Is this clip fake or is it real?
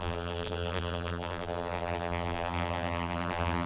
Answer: fake